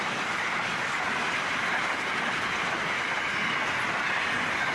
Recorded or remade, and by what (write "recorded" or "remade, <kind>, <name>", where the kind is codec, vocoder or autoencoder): recorded